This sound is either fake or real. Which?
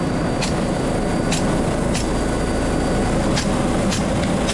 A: real